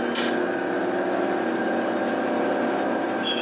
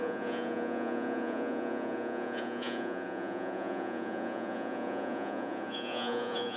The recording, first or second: first